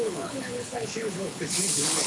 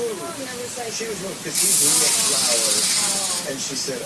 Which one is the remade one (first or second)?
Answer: first